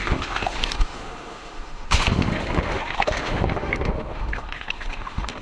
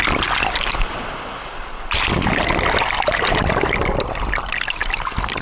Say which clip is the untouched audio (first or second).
second